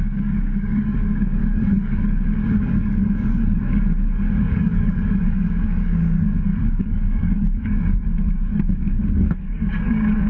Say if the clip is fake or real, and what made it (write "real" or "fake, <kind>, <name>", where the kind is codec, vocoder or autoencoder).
fake, codec, DAC